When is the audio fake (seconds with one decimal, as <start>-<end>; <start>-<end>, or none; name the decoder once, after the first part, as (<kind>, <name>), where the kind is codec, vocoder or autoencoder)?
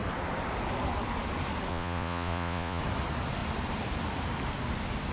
1.7-2.8 (vocoder, Vocos)